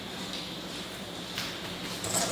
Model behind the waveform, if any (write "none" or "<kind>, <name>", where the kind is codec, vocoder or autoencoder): none